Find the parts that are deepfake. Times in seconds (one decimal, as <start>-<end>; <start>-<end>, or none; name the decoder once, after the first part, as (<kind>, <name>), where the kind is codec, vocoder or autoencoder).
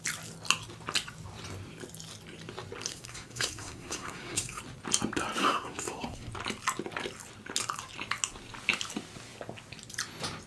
2.9-4.6 (codec, SNAC); 5.4-6.3